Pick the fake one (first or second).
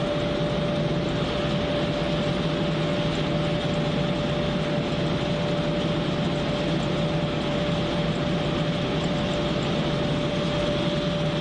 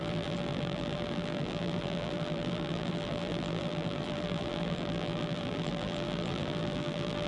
second